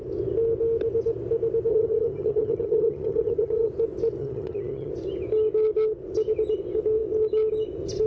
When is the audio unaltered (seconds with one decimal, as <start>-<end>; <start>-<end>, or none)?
0.0-1.7; 3.7-4.2; 4.9-8.1